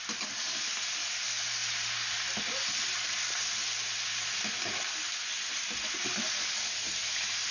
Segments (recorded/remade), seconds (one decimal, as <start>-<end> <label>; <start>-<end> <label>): 0.0-7.5 recorded